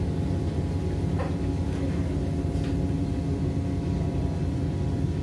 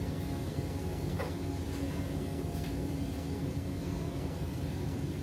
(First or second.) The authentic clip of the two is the first